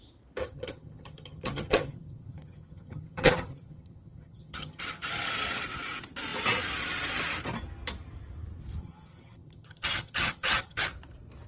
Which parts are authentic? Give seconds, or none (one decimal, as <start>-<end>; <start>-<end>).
0.0-0.4; 4.8-8.8; 10.8-11.5